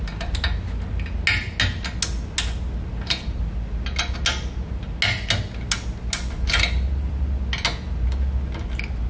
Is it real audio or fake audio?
real